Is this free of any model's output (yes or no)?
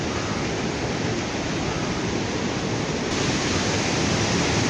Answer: yes